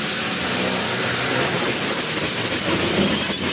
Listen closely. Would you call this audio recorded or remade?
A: recorded